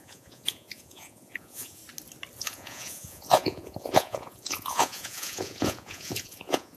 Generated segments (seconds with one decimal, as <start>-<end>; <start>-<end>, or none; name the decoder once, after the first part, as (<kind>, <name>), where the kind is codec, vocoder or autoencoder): 0.0-1.8 (vocoder, Vocos); 2.4-6.8